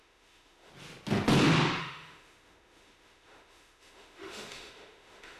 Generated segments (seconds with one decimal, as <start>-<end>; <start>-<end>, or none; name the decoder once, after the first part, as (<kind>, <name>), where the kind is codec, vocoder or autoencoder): 0.0-0.7 (autoencoder, DAC-VAE); 1.8-5.4